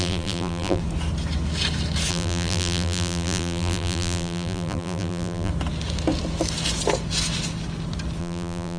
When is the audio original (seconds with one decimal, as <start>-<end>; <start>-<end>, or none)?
0.8-2.1; 5.5-8.2